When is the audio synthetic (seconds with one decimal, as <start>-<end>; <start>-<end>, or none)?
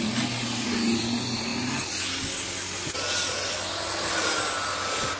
none